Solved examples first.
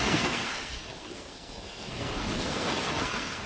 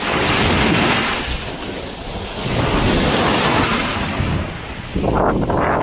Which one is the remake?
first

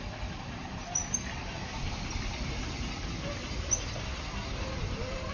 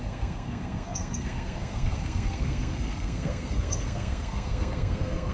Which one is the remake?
second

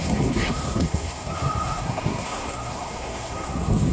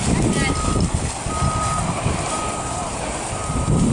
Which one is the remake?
first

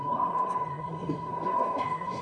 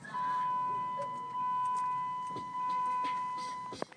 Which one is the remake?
first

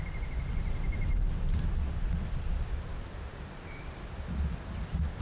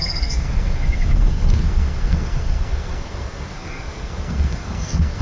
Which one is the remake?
second